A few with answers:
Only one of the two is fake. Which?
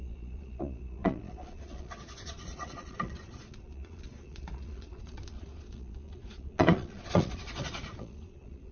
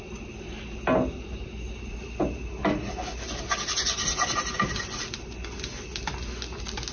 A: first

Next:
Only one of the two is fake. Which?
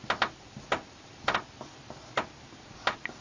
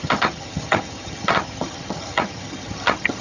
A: second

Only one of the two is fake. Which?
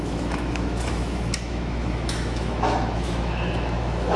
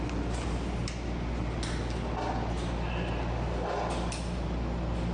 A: first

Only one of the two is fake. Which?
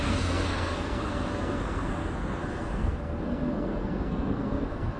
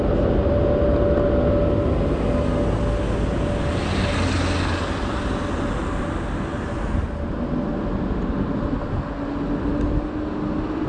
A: first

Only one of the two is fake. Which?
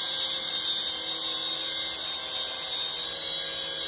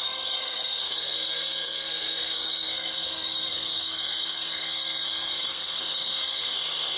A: second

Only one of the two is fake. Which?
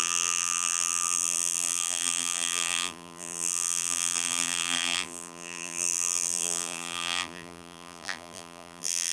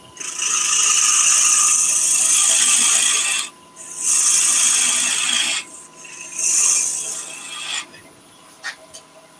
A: first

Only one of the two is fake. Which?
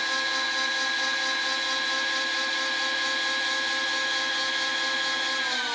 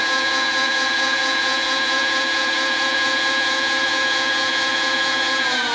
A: second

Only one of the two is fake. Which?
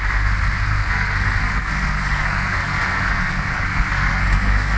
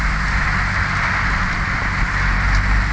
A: first